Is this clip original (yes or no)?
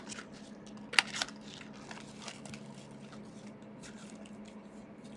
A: yes